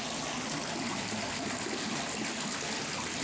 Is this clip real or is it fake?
real